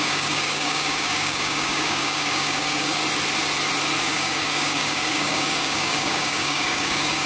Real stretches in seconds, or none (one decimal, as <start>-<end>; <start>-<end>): 3.0-4.0